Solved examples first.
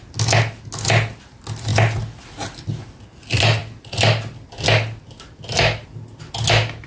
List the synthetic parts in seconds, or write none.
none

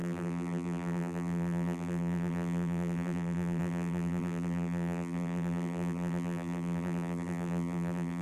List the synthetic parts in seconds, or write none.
0.0-8.2 (vocoder, BigVGAN v2)

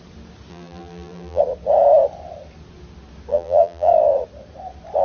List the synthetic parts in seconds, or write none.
0.5-1.4 (vocoder, BigVGAN v2); 3.3-3.9

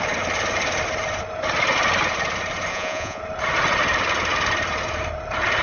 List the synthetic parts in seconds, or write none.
2.7-3.2 (vocoder, Vocos)

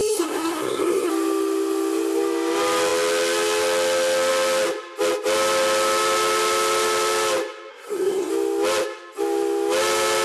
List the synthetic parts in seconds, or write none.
0.0-1.1 (codec, SNAC); 7.7-8.3

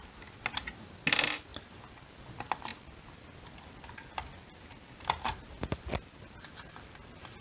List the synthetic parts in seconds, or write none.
none